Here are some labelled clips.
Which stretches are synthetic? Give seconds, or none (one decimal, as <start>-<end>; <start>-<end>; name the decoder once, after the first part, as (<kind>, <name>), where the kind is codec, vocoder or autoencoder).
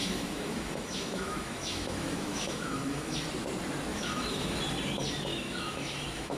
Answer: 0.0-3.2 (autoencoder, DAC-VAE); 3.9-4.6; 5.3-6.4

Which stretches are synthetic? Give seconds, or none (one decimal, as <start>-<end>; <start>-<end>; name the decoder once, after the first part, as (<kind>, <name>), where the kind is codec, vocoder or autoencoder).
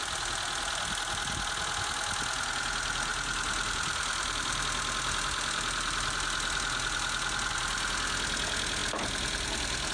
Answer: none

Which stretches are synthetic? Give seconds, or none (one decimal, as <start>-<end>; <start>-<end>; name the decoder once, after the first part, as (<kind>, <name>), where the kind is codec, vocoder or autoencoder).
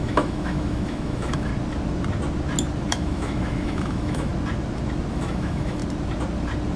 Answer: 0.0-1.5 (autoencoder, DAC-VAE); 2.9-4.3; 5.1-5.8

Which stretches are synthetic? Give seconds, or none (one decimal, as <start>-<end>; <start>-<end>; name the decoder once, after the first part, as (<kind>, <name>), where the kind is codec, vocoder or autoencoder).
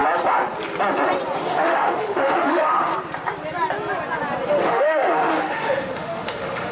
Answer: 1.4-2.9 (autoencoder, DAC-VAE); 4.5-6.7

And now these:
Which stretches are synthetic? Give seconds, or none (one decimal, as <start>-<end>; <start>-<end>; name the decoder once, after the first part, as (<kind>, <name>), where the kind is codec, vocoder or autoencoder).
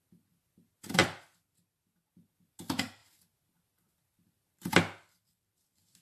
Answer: none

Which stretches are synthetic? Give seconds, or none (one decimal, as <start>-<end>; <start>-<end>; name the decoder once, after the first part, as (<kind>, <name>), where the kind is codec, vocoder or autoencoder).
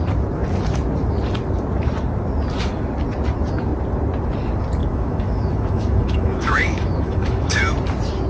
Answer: 4.8-7.6 (autoencoder, DAC-VAE)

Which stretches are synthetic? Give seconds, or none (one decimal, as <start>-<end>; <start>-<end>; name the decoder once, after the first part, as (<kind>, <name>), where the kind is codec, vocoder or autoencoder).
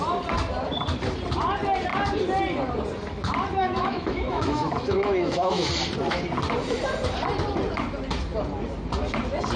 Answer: 3.6-5.7 (autoencoder, DAC-VAE)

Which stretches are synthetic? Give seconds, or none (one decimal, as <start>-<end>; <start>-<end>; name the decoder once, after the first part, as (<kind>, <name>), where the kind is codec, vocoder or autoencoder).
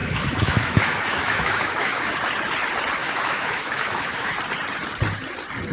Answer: 0.0-2.1 (autoencoder, DAC-VAE); 3.0-4.3